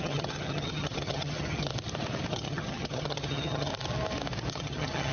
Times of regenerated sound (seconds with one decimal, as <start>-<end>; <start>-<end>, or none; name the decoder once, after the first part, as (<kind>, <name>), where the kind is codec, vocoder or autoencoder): 0.0-1.7 (vocoder, HiFi-GAN); 2.3-3.7; 4.5-5.1